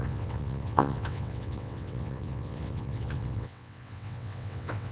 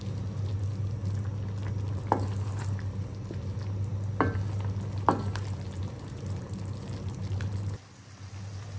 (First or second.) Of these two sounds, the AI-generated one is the first